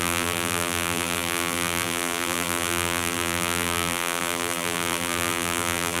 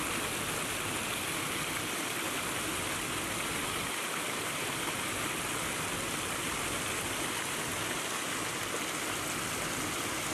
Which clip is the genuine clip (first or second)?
second